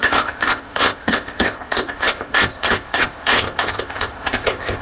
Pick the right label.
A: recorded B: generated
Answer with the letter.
B